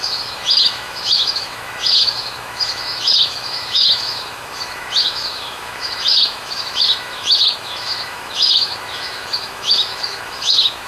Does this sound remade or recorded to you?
remade